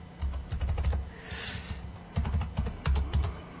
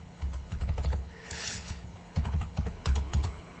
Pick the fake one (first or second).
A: second